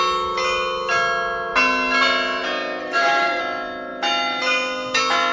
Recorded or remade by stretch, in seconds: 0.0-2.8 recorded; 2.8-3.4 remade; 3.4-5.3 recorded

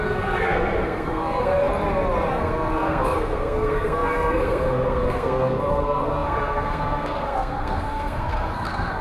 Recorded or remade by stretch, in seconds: 0.0-1.7 remade; 1.7-2.3 recorded; 2.3-9.0 remade

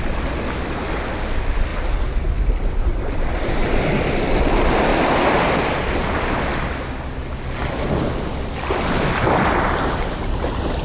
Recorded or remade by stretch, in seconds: 0.0-10.8 recorded